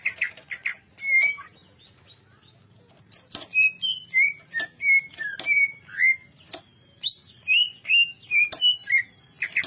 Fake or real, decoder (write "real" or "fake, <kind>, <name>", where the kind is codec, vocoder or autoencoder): real